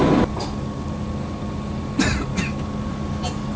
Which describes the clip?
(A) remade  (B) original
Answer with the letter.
B